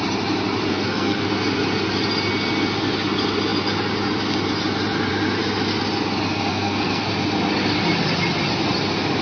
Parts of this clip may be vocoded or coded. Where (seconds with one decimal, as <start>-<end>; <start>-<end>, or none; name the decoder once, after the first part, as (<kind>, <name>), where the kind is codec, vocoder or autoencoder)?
0.7-1.3 (codec, SNAC); 6.5-7.1